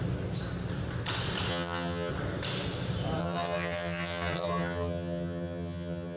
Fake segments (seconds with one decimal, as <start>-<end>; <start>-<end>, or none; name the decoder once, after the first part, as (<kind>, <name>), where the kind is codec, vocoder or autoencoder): 1.5-2.1 (vocoder, HiFi-GAN); 3.2-6.2

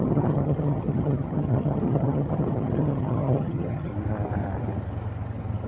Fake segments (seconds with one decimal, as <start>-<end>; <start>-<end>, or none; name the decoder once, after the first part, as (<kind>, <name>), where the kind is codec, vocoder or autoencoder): 0.0-3.9 (vocoder, HiFi-GAN)

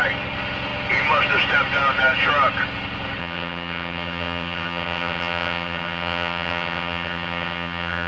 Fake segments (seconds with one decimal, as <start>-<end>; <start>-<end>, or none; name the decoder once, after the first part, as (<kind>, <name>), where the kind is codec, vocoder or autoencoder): 3.2-8.1 (vocoder, HiFi-GAN)